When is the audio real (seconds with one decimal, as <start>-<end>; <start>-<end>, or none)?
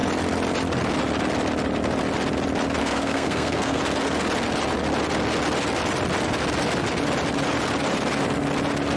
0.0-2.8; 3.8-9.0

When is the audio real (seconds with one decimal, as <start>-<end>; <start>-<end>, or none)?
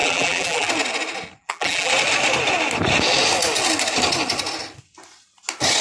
0.7-1.4; 1.9-5.8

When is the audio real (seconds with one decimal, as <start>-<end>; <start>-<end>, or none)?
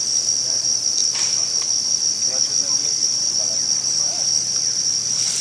0.0-5.4